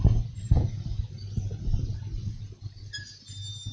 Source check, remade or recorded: recorded